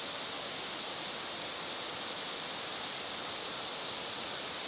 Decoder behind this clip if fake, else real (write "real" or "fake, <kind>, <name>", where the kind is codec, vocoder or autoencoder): real